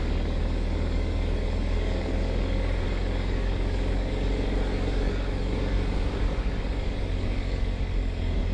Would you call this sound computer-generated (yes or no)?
yes